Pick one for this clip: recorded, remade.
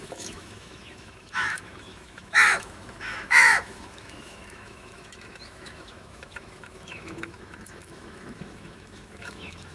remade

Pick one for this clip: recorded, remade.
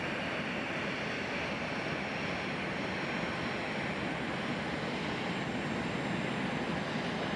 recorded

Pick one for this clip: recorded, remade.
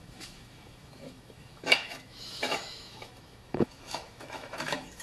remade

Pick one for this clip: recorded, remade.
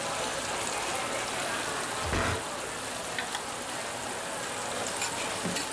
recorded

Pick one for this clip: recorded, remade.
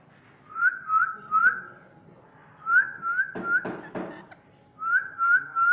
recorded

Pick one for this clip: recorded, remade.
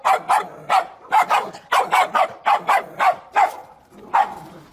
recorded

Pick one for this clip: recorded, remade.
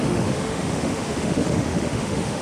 remade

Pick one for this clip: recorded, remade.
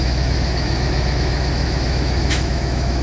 remade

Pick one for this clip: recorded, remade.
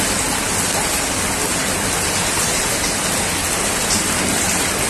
recorded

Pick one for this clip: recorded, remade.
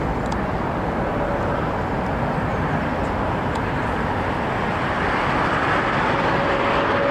recorded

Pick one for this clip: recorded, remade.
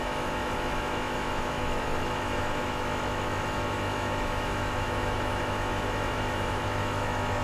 remade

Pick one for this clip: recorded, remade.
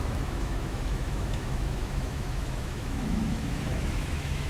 remade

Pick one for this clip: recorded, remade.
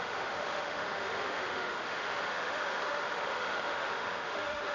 remade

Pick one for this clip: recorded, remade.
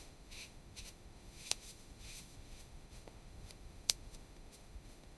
remade